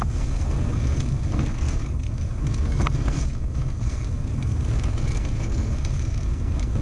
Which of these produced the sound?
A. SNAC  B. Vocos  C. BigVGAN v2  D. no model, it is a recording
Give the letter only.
A